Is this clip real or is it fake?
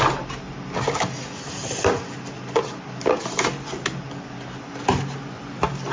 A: real